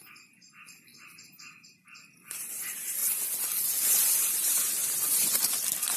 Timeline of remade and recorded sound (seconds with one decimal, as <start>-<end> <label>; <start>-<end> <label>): 0.0-3.0 remade; 3.0-4.0 recorded; 4.0-6.0 remade